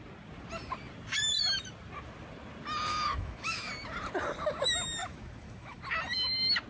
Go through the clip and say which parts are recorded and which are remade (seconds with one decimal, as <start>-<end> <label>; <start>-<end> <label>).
0.0-2.9 recorded; 2.9-3.7 remade; 3.7-5.0 recorded; 5.0-5.8 remade; 5.8-6.7 recorded